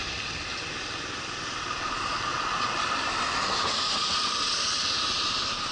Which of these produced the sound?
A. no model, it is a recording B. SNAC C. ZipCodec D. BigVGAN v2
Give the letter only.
A